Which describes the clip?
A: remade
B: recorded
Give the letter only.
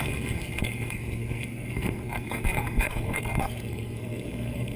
A